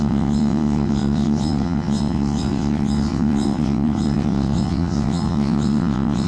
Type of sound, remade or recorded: remade